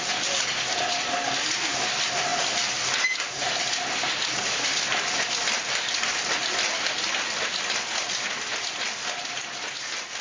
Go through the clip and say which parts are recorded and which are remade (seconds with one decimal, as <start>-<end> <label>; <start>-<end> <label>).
0.0-10.2 recorded